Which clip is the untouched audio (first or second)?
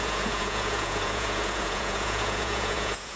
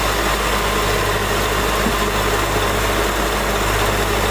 second